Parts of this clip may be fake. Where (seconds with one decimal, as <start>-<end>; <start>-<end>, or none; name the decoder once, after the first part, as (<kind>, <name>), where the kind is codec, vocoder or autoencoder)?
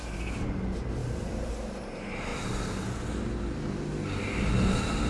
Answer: 1.0-1.5 (vocoder, BigVGAN v2)